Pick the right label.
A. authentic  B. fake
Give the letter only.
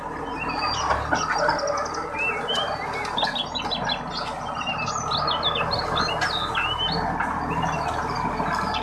A